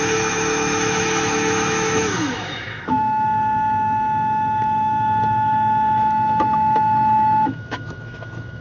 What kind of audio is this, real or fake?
fake